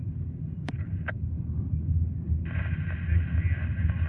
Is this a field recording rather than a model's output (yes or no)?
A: yes